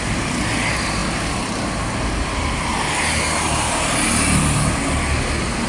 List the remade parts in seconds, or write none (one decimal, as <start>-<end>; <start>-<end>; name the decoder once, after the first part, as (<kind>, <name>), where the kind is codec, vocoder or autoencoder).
none